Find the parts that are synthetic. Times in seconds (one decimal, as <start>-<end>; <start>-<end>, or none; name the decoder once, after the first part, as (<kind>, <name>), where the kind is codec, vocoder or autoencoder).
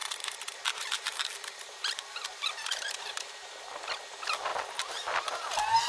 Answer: 0.0-3.4 (vocoder, BigVGAN v2)